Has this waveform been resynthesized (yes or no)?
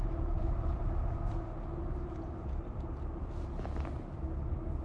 no